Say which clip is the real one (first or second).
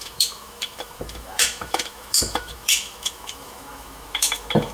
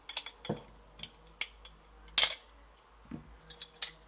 second